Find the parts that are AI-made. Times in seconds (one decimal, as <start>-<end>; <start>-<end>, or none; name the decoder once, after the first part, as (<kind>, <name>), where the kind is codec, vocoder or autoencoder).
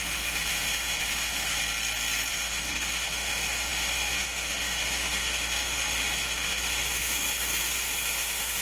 0.0-1.6 (autoencoder, DAC-VAE); 2.3-8.6